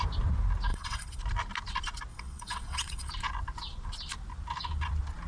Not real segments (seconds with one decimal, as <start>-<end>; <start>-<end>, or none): 0.7-1.2; 2.1-3.1